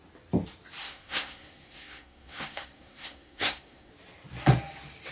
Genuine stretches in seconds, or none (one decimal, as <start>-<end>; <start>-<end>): 0.0-0.8; 3.9-5.1